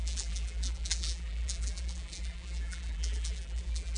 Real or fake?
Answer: fake